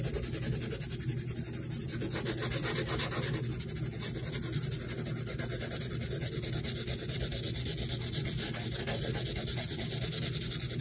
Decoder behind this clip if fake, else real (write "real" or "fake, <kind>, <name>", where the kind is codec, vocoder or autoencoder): real